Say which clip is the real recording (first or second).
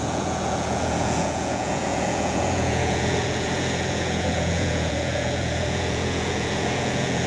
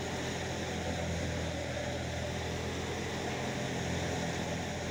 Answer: second